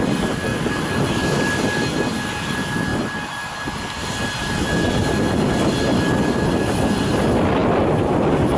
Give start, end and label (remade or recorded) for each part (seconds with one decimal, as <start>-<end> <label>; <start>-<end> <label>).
0.0-8.6 recorded